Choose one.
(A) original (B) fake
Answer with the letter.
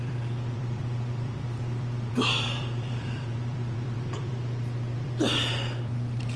B